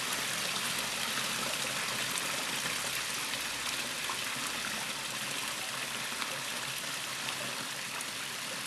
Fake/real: real